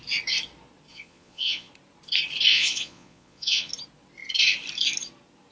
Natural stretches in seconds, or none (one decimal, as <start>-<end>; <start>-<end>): 0.0-0.9; 1.7-2.5; 3.7-5.5